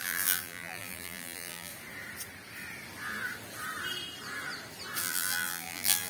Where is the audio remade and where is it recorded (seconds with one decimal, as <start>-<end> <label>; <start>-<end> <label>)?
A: 0.0-1.7 remade; 1.7-5.0 recorded; 5.0-6.1 remade